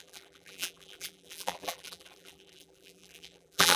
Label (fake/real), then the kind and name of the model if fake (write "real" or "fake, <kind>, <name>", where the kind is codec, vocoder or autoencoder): fake, vocoder, BigVGAN v2